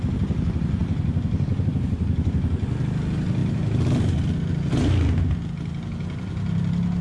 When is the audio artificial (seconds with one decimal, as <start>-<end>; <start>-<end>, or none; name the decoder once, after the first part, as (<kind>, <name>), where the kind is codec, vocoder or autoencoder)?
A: none